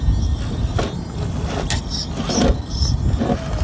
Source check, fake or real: real